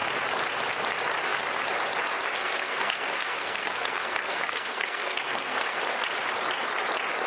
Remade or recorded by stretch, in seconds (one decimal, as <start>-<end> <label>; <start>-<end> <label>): 0.0-2.4 recorded; 2.4-5.8 remade; 5.8-7.3 recorded